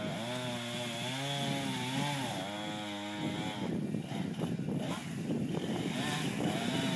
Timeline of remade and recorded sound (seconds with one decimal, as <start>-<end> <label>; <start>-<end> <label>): 0.0-7.0 recorded